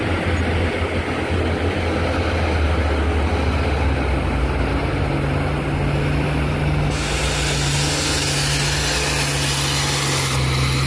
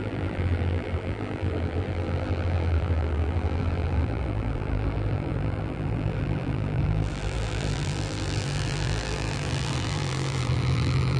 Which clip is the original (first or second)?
first